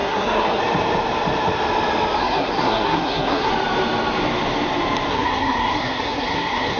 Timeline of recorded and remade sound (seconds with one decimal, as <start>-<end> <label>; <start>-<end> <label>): 0.0-0.6 remade; 0.6-2.2 recorded; 2.2-3.5 remade; 3.5-5.1 recorded; 5.1-6.8 remade

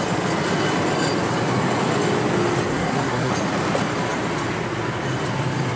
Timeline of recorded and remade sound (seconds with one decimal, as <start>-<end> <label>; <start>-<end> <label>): 0.0-2.7 recorded; 2.7-3.3 remade; 3.3-5.8 recorded

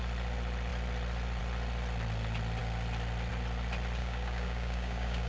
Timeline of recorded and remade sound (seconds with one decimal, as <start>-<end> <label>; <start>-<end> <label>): 0.0-4.0 recorded; 4.0-5.3 remade

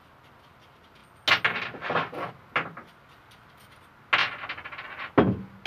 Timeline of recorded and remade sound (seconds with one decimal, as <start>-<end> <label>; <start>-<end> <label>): 0.0-5.7 recorded